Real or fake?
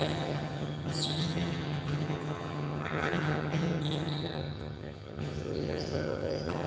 fake